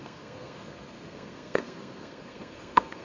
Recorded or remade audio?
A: remade